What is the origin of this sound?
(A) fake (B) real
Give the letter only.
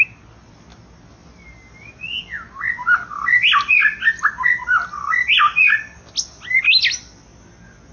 B